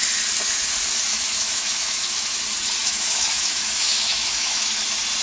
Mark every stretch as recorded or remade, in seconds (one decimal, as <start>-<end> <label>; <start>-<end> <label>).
0.0-1.1 recorded; 1.1-2.4 remade; 2.4-2.8 recorded; 2.8-4.8 remade; 4.8-5.2 recorded